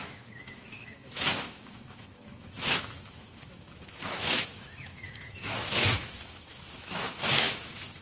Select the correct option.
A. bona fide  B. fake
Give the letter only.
B